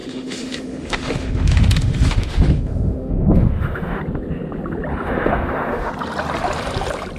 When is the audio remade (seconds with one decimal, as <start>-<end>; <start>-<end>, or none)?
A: 0.0-4.0; 4.9-5.9